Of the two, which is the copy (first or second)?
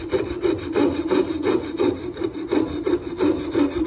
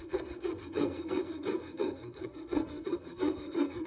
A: second